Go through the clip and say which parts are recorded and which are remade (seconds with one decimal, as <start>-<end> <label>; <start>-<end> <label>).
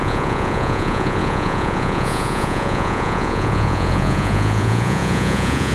0.0-5.7 remade